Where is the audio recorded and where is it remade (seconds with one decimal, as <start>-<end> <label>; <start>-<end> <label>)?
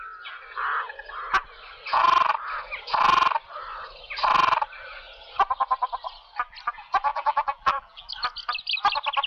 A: 0.0-7.1 recorded; 7.1-8.1 remade; 8.1-9.3 recorded